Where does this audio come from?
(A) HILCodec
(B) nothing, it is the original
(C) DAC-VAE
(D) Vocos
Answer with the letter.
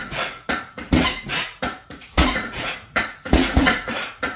D